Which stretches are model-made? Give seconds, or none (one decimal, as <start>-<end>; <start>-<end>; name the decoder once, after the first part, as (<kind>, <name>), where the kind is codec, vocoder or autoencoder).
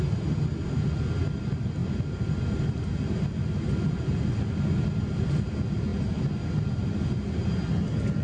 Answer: none